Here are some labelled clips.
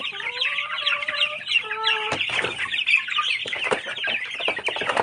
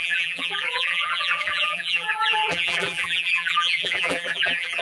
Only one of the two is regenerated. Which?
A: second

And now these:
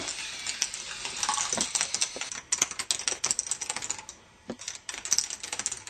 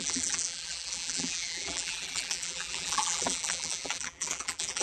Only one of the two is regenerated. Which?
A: second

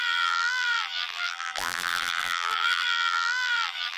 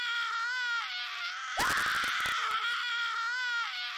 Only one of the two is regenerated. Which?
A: first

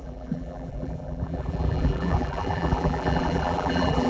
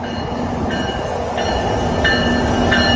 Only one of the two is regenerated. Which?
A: first